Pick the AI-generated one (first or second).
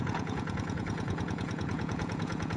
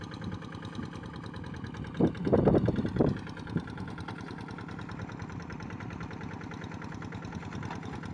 first